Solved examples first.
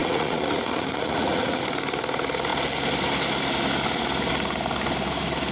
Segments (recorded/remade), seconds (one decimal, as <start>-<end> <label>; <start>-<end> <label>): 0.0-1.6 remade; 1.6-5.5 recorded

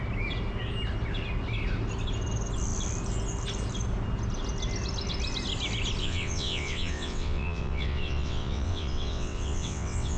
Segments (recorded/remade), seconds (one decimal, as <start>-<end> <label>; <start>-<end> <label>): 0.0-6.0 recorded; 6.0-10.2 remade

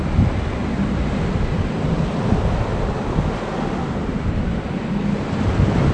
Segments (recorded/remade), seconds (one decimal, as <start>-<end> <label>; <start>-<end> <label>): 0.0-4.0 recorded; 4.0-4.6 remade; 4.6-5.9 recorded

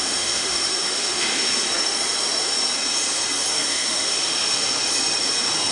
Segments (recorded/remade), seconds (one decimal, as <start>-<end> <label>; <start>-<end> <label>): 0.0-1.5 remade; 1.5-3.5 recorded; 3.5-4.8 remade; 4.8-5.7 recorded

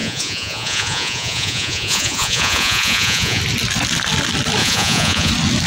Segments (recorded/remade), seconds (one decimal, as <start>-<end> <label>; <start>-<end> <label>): 0.0-3.4 remade; 3.4-4.6 recorded; 4.6-5.3 remade; 5.3-5.7 recorded

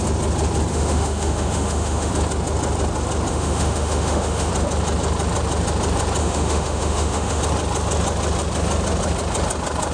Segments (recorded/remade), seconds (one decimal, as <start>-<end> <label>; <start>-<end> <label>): 0.0-0.7 recorded; 0.7-2.1 remade; 2.1-3.3 recorded; 3.3-4.5 remade; 4.5-6.2 recorded; 6.2-7.4 remade; 7.4-9.9 recorded